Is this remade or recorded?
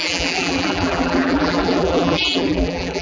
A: remade